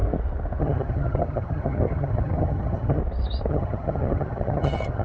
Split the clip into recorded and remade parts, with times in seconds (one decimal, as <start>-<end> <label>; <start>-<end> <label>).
0.0-0.6 recorded; 0.6-3.0 remade; 3.0-3.5 recorded; 3.5-5.0 remade